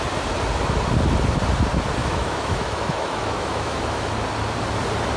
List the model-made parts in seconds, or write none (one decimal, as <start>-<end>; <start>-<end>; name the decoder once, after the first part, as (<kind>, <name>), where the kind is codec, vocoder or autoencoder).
2.0-4.1 (autoencoder, DAC-VAE)